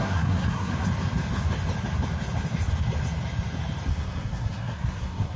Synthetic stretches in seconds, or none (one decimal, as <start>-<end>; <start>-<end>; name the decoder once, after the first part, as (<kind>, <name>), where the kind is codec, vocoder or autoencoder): 0.0-0.7 (codec, SNAC); 3.9-5.4